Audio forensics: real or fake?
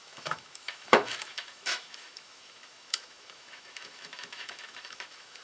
fake